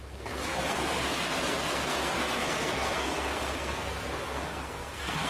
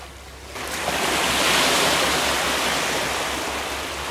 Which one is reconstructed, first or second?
first